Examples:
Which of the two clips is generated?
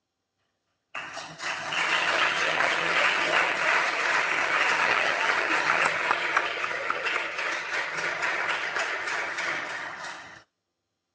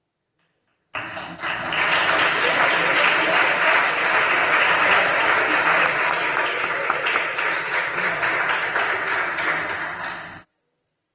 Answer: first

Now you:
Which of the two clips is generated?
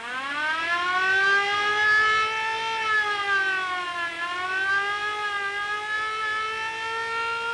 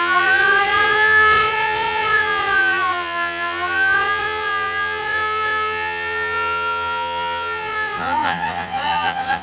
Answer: second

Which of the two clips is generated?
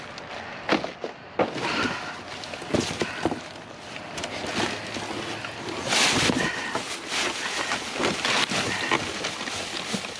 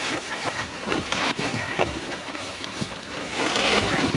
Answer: second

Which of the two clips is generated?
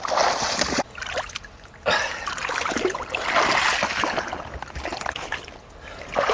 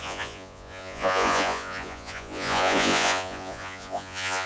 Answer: second